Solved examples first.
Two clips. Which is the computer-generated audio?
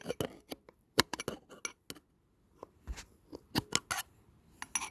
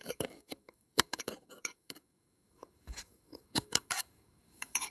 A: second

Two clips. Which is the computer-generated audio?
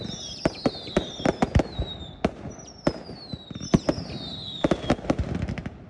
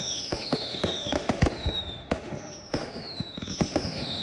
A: second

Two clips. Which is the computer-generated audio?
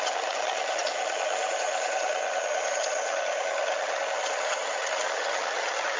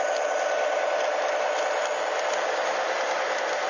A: first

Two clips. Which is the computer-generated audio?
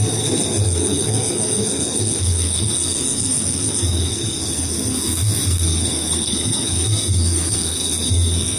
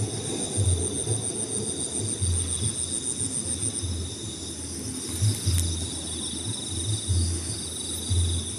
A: first